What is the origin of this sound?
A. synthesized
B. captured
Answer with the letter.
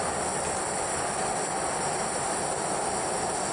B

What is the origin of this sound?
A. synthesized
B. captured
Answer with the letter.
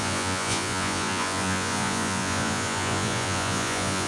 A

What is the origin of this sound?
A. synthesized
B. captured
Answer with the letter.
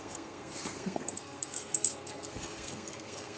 A